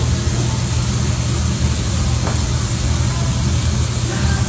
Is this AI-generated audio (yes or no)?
no